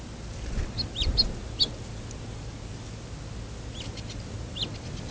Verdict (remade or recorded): recorded